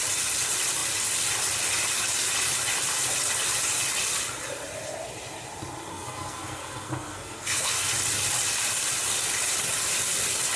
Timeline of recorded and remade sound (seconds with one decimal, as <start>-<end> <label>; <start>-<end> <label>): 0.0-5.9 recorded; 5.9-7.9 remade; 7.9-10.6 recorded